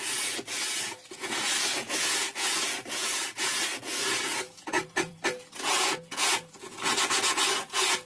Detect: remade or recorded remade